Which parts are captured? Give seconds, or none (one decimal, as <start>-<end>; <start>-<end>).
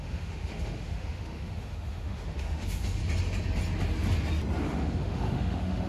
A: 3.0-4.6